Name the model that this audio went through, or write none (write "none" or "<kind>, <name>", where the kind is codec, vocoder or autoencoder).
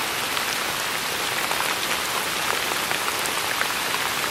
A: none